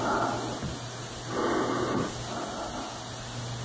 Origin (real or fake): real